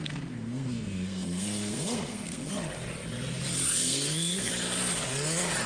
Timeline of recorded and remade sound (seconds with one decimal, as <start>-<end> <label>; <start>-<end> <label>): 0.0-2.5 remade; 2.5-3.8 recorded; 3.8-4.5 remade; 4.5-5.7 recorded